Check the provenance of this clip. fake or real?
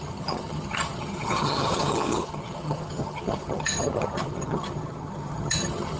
fake